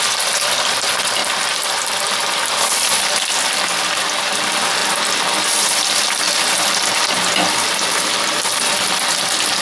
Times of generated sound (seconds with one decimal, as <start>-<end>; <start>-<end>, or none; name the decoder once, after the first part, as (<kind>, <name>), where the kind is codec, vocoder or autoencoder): none